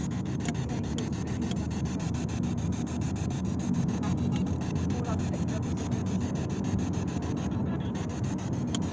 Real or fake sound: real